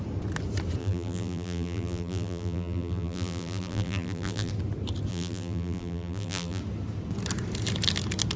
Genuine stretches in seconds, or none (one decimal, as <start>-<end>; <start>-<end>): 0.0-0.8; 4.5-5.1; 6.6-8.4